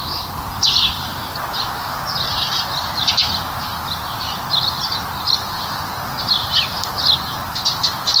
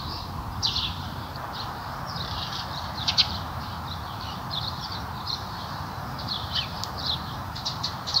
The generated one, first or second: second